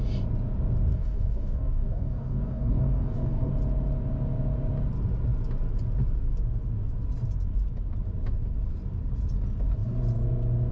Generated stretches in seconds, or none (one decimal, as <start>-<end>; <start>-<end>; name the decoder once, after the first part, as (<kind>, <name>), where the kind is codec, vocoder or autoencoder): 0.9-3.5 (codec, DAC)